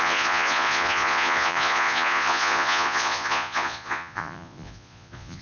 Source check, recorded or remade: remade